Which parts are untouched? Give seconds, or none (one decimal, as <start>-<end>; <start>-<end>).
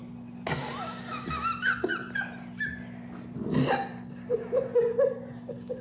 0.0-5.8